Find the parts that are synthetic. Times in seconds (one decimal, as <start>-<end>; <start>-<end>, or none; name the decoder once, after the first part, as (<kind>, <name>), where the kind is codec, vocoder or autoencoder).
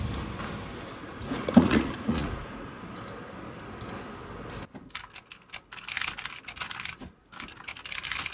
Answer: 1.0-2.7 (vocoder, Vocos)